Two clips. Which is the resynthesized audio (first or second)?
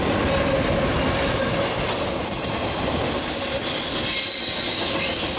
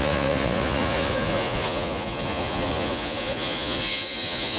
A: second